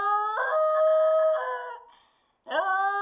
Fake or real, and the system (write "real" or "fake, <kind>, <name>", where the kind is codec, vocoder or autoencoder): real